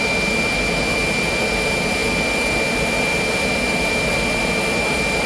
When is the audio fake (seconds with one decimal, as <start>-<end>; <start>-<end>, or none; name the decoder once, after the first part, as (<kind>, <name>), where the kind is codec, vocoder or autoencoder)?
none